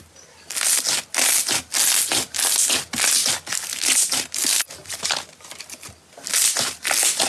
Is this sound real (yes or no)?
yes